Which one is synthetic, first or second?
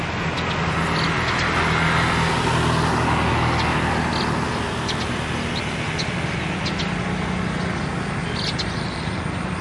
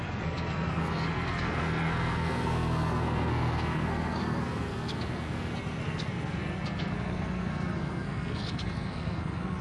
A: second